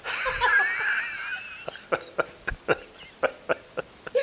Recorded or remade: recorded